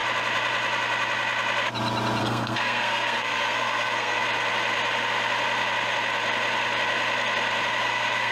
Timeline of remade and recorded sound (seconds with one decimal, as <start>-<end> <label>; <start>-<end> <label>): 0.0-2.2 recorded; 2.2-4.2 remade; 4.2-7.8 recorded; 7.8-8.3 remade